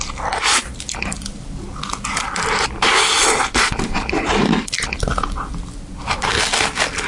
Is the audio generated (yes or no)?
no